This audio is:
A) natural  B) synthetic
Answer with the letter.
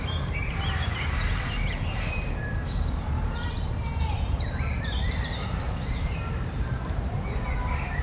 B